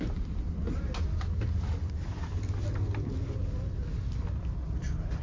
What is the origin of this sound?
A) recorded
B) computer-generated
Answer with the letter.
A